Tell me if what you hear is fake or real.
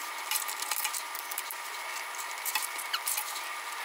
real